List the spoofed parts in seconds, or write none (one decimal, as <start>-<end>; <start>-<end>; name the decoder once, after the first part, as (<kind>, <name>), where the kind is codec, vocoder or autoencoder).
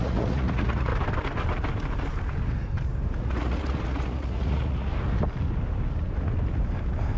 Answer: 0.0-0.9 (vocoder, Vocos); 3.2-4.9